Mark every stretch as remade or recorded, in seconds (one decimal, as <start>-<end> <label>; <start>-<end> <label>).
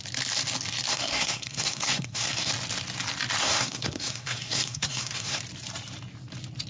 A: 0.0-0.9 recorded; 0.9-2.5 remade; 2.5-3.4 recorded; 3.4-5.4 remade; 5.4-6.7 recorded